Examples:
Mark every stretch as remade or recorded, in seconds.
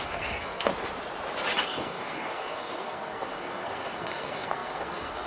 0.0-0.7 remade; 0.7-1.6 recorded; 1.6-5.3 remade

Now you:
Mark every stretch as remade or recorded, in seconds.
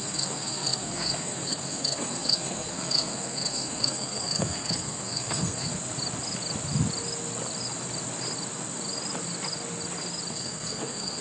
0.0-5.7 remade; 5.7-10.3 recorded; 10.3-11.2 remade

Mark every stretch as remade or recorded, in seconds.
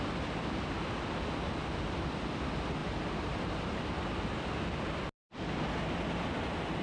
0.0-6.8 recorded